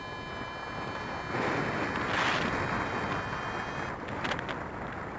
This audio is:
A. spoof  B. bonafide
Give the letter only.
B